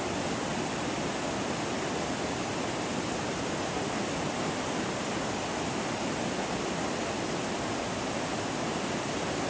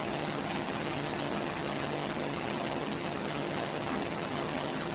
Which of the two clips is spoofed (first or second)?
second